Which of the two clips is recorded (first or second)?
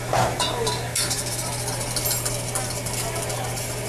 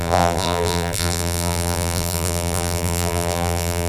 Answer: first